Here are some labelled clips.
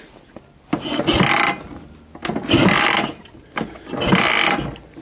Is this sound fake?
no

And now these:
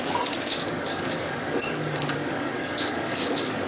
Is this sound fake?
yes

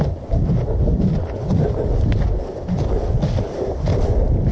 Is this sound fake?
no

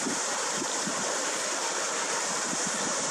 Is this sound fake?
no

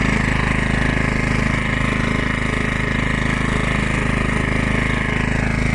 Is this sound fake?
no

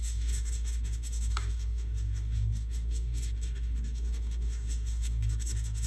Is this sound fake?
yes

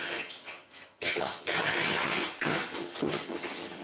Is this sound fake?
yes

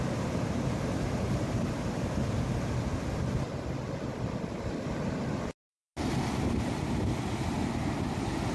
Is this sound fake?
no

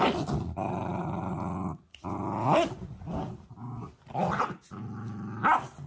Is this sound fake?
no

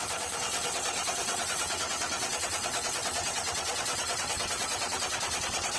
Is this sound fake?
yes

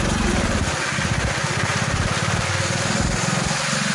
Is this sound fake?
no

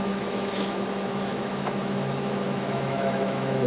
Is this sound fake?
yes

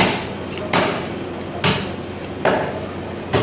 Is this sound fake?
no